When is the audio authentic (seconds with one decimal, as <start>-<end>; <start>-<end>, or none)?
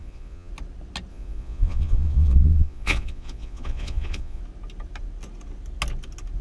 0.5-1.1; 4.4-6.4